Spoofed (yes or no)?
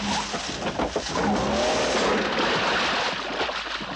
no